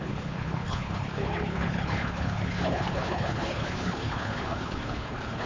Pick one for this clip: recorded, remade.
remade